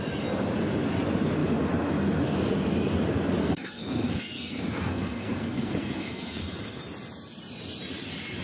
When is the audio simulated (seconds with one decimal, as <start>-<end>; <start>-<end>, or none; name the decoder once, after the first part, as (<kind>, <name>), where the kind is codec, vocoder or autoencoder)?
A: 3.4-6.4 (codec, SNAC)